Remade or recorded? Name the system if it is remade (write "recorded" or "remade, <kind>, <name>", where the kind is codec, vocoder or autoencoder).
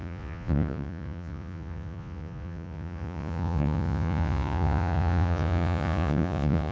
remade, vocoder, Vocos